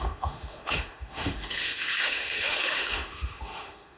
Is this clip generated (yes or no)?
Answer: yes